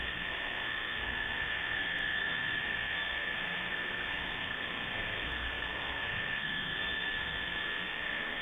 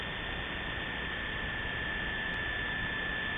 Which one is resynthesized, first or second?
first